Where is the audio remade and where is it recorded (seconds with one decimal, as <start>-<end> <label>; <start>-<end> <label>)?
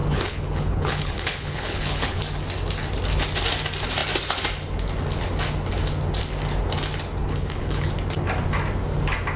0.0-2.2 remade; 2.2-7.2 recorded; 7.2-7.9 remade; 7.9-9.4 recorded